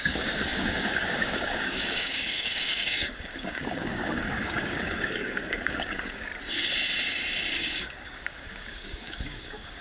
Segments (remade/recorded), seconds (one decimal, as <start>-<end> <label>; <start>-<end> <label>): 0.0-6.3 remade; 6.3-7.5 recorded; 7.5-9.8 remade